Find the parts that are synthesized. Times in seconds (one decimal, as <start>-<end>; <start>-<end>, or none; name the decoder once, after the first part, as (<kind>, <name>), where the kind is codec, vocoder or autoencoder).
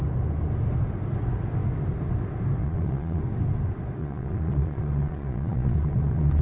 2.6-3.2 (vocoder, Vocos); 4.0-6.4